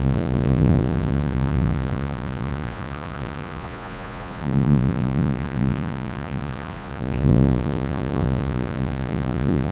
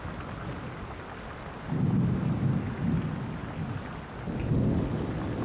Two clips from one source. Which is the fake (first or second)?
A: first